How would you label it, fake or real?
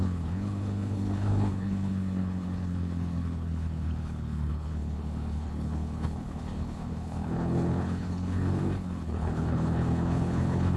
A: fake